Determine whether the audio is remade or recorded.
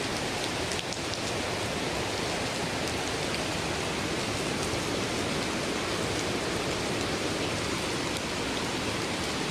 recorded